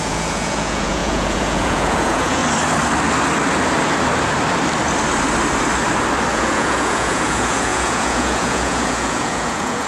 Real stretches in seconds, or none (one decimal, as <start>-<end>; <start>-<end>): 2.4-6.3